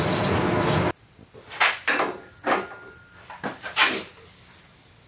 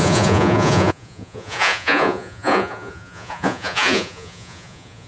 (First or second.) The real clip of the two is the first